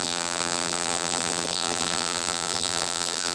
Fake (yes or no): yes